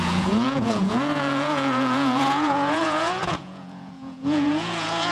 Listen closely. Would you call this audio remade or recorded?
remade